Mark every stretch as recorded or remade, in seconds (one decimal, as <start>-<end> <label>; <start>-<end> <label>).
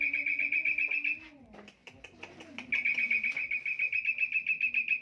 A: 0.0-5.0 recorded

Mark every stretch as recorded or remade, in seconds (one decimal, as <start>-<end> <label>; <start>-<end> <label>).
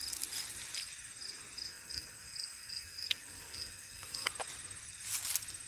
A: 0.0-1.7 recorded; 1.7-4.3 remade; 4.3-5.7 recorded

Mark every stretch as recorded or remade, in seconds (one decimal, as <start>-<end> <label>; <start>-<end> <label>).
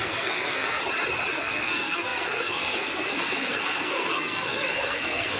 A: 0.0-0.8 remade; 0.8-1.3 recorded; 1.3-5.4 remade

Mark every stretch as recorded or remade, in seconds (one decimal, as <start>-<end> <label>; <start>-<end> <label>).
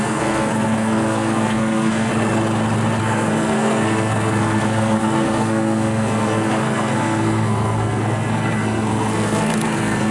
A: 0.0-2.1 remade; 2.1-3.0 recorded; 3.0-10.1 remade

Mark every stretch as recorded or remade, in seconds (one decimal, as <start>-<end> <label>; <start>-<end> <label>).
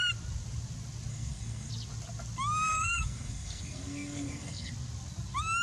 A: 0.0-1.1 recorded; 1.1-1.7 remade; 1.7-2.7 recorded; 2.7-4.7 remade; 4.7-5.6 recorded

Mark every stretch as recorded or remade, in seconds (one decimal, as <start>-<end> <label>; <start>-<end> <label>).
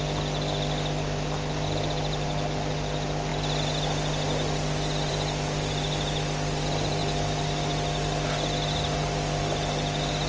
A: 0.0-10.3 recorded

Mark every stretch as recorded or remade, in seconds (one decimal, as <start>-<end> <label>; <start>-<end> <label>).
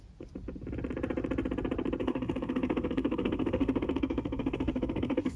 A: 0.0-2.0 recorded; 2.0-5.4 remade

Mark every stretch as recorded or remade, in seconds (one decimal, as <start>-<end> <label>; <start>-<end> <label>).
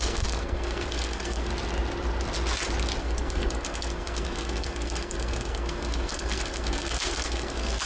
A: 0.0-1.5 remade; 1.5-3.0 recorded; 3.0-7.9 remade